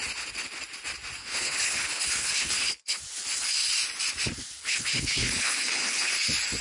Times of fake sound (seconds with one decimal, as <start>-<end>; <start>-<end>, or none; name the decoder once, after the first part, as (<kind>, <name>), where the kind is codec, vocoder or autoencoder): 1.2-3.0 (codec, HILCodec); 4.6-6.1